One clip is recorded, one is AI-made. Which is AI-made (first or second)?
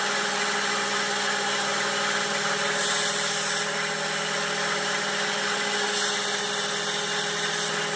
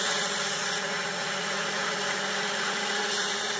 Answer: second